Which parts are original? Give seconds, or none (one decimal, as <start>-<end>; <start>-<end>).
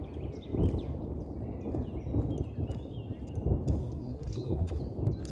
0.0-3.8; 4.8-5.3